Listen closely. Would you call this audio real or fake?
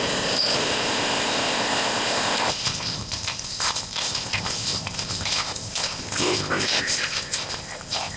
fake